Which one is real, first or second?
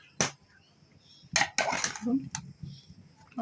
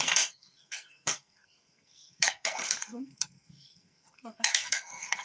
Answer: first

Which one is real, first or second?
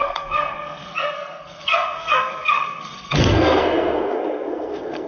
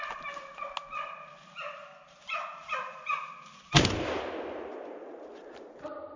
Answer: second